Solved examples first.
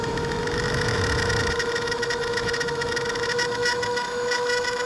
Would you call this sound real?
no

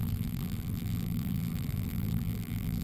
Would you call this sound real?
no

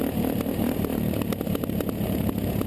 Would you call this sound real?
no